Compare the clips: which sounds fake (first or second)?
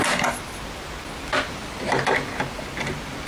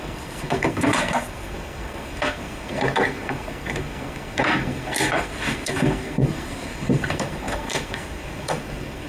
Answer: second